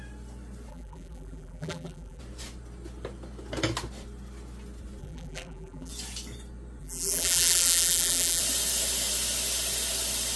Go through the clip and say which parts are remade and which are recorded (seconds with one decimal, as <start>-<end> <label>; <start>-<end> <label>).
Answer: 0.0-0.7 recorded; 0.7-2.2 remade; 2.2-5.0 recorded; 5.0-5.9 remade; 5.9-6.8 recorded; 6.8-8.4 remade; 8.4-10.4 recorded